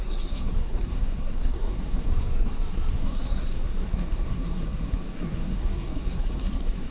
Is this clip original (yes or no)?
no